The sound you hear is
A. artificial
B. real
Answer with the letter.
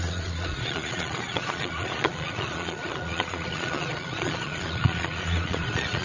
A